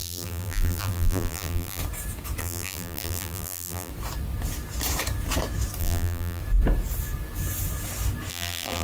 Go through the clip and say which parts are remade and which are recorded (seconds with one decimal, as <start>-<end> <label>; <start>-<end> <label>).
0.0-1.8 remade; 1.8-2.4 recorded; 2.4-3.9 remade; 3.9-5.8 recorded; 5.8-6.4 remade; 6.4-8.3 recorded; 8.3-8.8 remade